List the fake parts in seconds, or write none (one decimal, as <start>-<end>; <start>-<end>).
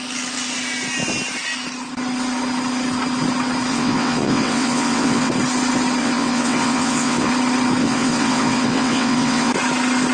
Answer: 3.7-5.3; 6.0-7.3; 7.8-9.5